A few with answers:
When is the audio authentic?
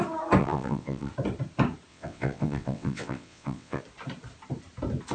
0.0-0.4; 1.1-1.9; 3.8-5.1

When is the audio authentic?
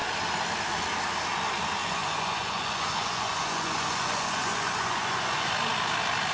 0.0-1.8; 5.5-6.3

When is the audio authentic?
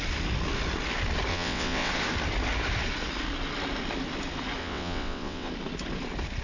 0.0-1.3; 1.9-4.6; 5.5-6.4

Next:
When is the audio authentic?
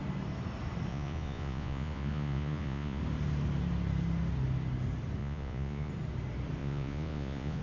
0.0-0.9; 3.0-5.2; 5.9-6.6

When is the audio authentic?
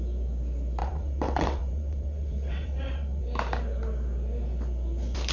0.0-0.8; 3.2-5.3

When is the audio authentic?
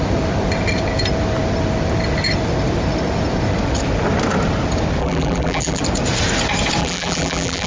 0.0-5.0; 5.8-6.8